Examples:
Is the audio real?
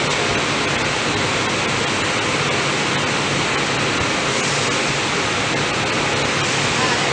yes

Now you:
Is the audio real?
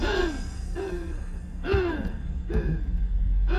no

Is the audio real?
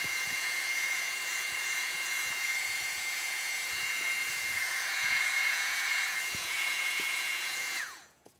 no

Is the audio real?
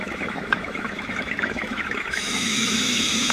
no